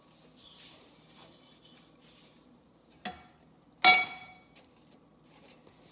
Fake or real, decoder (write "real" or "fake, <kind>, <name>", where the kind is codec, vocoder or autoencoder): real